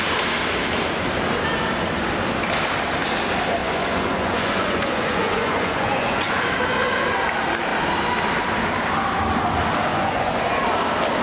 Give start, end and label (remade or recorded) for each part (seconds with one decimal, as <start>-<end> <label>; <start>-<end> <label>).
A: 0.0-3.6 recorded; 3.6-6.4 remade; 6.4-9.9 recorded; 9.9-10.6 remade; 10.6-11.2 recorded